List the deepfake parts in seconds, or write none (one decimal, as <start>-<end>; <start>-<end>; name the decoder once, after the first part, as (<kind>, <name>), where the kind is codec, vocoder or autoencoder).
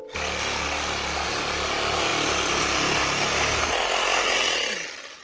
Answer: none